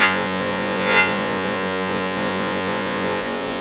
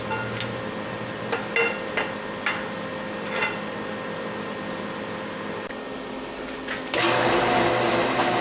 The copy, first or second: first